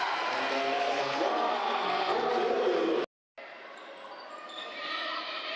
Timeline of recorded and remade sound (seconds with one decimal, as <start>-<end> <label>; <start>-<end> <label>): 0.0-0.5 recorded; 0.5-2.3 remade; 2.3-5.6 recorded